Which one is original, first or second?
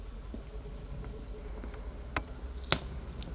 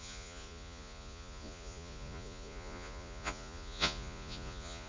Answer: first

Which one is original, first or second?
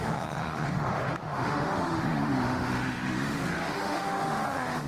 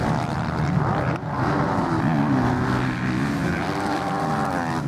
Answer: second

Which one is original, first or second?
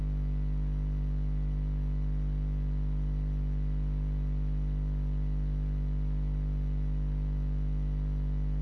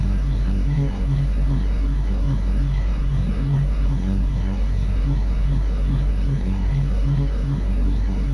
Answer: first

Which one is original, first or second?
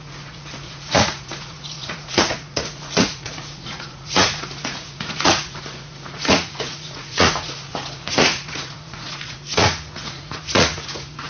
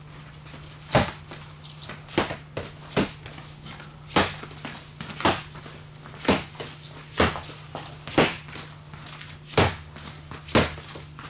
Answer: second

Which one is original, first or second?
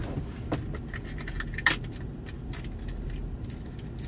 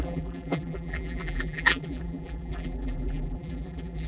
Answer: first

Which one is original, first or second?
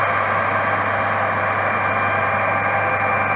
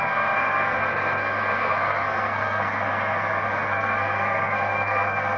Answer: first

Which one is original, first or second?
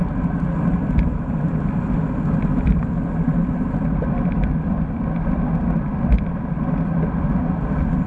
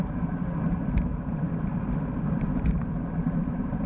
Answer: first